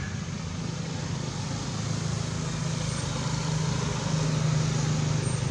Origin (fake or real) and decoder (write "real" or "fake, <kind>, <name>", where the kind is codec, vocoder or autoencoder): real